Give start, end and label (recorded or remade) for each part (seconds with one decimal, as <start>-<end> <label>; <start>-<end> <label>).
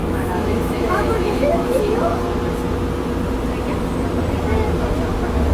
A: 0.0-2.1 remade; 2.1-5.5 recorded